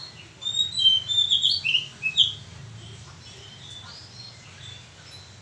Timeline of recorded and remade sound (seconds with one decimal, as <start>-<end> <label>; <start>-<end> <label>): 0.0-5.4 recorded